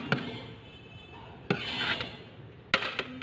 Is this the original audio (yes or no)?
yes